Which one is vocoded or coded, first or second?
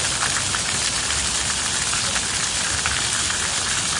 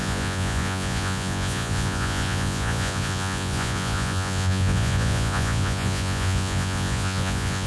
second